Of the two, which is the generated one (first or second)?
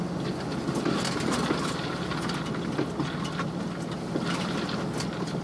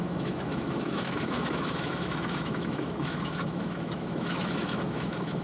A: second